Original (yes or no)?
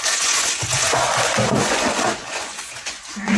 no